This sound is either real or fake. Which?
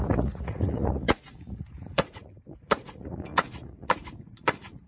fake